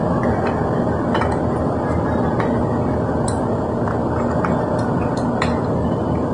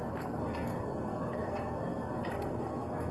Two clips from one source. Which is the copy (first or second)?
second